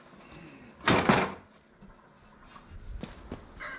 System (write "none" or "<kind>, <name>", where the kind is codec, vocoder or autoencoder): none